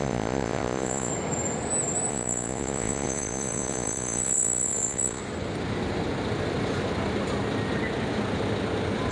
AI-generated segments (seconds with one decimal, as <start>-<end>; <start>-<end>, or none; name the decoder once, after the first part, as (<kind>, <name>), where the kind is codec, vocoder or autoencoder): 0.0-1.1 (vocoder, Vocos); 2.1-5.2